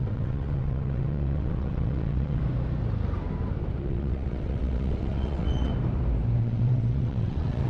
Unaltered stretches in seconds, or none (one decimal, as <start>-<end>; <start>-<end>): 2.4-3.8; 5.7-6.4